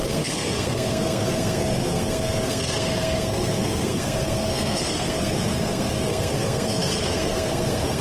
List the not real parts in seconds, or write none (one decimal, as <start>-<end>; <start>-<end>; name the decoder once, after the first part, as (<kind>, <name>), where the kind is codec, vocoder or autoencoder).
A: 0.0-8.0 (codec, SNAC)

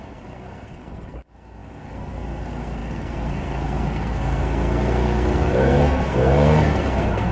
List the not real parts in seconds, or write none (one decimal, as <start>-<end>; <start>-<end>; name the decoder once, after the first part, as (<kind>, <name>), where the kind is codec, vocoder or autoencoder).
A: 0.0-7.3 (codec, SNAC)

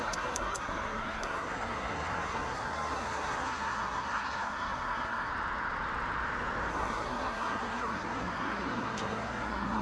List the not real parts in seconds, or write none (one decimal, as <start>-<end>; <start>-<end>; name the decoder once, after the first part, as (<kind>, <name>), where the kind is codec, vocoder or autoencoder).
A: 0.0-5.3 (codec, SNAC); 6.7-9.8

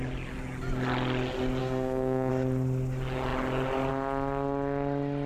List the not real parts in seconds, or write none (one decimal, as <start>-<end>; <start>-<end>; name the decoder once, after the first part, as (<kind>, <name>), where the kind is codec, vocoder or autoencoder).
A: 1.6-2.3 (codec, SNAC)